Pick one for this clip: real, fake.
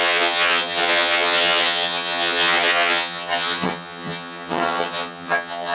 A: fake